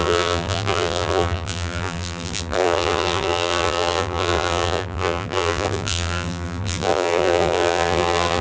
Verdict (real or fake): fake